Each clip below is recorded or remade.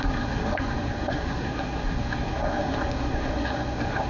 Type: remade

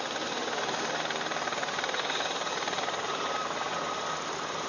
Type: recorded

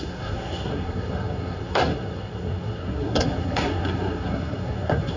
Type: remade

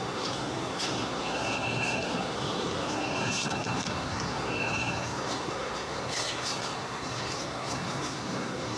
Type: remade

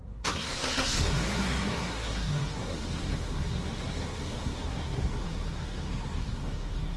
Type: remade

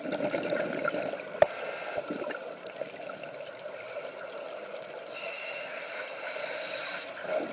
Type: recorded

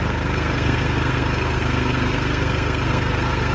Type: remade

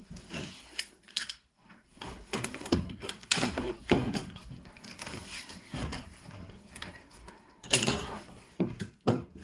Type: remade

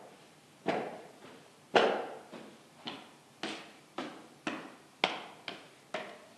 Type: recorded